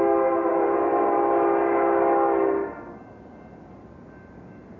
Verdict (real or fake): real